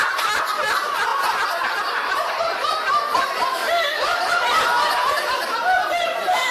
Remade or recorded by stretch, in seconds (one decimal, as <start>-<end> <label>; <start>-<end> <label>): 0.0-3.6 recorded; 3.6-5.1 remade; 5.1-6.5 recorded